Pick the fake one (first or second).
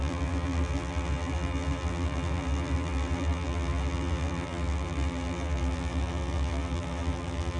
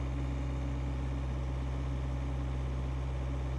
first